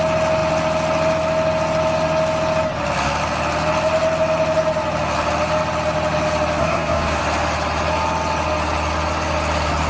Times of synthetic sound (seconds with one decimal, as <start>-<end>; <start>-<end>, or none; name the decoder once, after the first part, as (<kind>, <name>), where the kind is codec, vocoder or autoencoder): 6.6-7.2 (codec, SNAC)